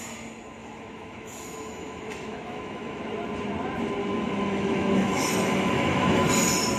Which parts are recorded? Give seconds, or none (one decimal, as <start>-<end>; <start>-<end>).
0.0-0.6; 3.0-4.0; 6.3-6.8